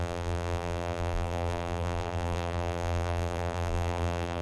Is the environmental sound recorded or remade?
remade